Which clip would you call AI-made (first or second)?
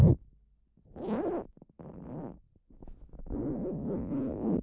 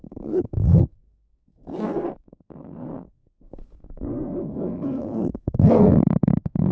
second